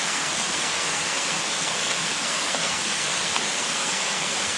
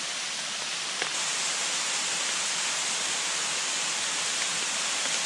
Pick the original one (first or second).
second